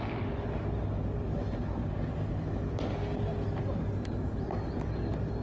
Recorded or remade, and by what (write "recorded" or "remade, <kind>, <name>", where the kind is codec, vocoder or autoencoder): recorded